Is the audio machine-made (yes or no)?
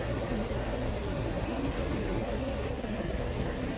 yes